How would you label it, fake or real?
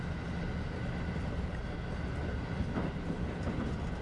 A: real